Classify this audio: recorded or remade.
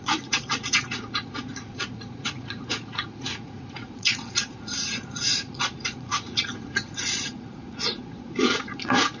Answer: remade